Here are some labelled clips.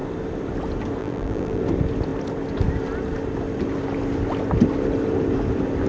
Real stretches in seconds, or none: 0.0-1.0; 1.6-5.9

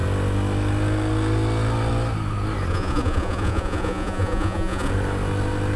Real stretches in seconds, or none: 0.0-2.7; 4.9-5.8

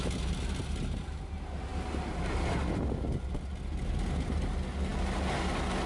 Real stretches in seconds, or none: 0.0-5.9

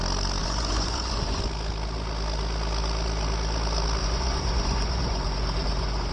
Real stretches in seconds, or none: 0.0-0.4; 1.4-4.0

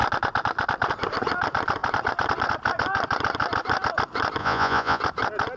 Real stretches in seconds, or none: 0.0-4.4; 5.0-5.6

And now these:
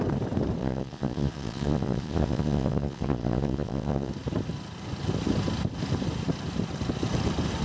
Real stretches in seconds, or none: 0.0-0.6; 4.1-7.6